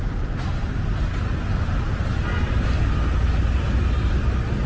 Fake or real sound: real